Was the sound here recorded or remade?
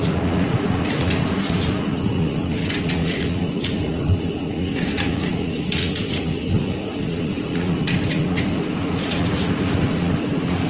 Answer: remade